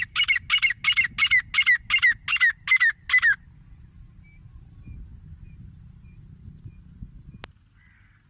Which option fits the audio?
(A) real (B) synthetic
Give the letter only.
A